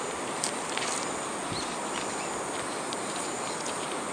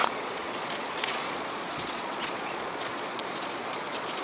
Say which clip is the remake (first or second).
second